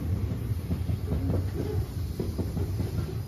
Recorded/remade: recorded